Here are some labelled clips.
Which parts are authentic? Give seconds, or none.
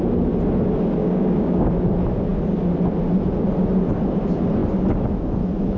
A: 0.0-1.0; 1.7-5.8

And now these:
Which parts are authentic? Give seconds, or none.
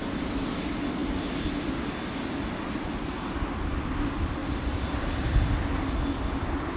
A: 0.0-6.8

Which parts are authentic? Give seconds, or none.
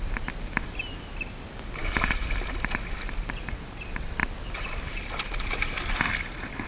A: 0.0-6.7